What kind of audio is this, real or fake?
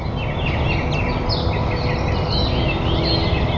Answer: real